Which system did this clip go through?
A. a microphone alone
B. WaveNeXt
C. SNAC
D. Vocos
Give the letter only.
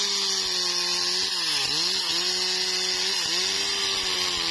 A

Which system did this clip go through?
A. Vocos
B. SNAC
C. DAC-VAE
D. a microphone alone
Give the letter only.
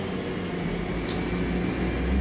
D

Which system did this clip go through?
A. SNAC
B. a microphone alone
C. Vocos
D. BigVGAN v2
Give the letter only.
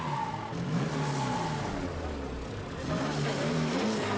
B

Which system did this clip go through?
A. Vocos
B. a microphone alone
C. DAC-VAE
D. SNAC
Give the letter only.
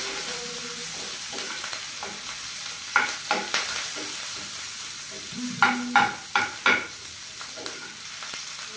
B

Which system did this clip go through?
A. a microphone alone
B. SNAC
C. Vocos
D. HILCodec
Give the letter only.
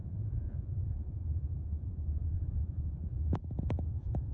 C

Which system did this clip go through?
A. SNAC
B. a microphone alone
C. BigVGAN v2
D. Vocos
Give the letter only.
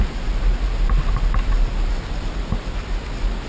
B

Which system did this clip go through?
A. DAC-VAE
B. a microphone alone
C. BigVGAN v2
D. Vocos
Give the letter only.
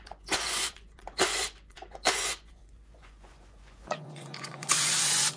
D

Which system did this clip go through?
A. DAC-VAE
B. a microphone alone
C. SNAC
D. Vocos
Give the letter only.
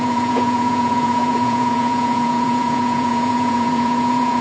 D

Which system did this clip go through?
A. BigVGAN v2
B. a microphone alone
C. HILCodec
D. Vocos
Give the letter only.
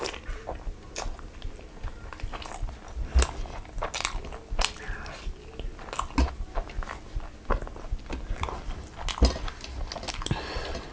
B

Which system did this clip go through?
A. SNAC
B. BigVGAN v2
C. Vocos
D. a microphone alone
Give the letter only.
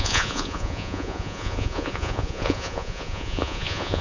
C